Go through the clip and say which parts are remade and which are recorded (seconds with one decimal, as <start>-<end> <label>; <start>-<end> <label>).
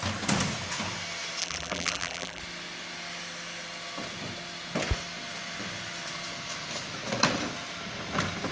0.0-1.4 recorded; 1.4-2.4 remade; 2.4-8.5 recorded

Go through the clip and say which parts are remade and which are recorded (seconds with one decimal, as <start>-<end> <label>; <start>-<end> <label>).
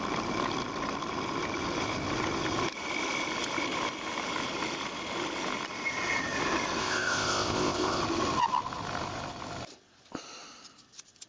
0.0-6.8 recorded; 6.8-8.0 remade; 8.0-11.3 recorded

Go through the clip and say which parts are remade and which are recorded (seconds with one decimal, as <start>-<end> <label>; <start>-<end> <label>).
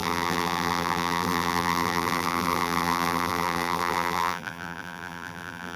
0.0-5.8 remade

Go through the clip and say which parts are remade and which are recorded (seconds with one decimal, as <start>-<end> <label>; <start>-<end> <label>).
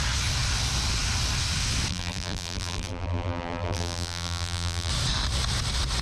0.0-1.9 recorded; 1.9-4.9 remade; 4.9-6.0 recorded